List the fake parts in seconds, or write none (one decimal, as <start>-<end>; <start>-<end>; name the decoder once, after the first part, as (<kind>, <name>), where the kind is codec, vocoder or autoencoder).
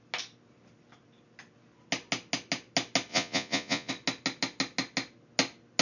3.1-3.9 (vocoder, Vocos)